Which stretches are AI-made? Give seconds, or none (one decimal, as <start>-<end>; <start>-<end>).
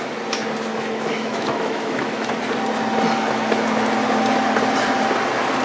0.7-2.3